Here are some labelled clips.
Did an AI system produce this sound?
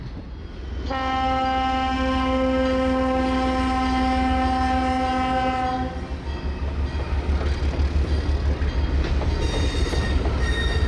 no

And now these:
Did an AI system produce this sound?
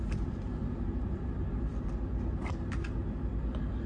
no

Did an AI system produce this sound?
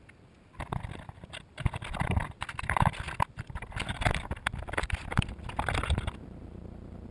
yes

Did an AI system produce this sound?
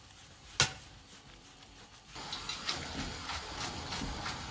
no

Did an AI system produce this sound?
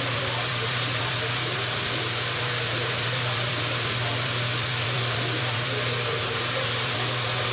yes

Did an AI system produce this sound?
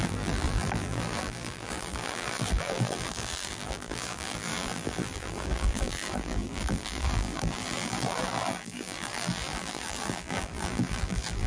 yes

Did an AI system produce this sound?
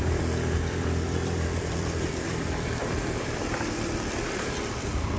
yes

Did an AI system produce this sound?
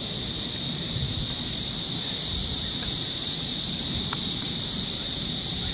yes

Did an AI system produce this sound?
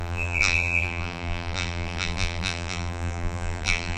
yes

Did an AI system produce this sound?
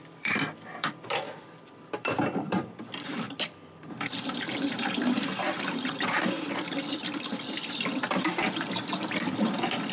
yes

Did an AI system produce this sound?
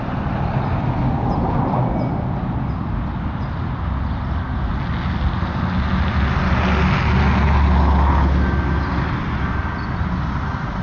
no